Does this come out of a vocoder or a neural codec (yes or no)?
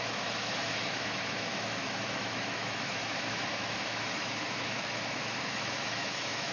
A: yes